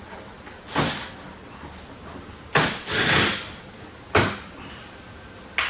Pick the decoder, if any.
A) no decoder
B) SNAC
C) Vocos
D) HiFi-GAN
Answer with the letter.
A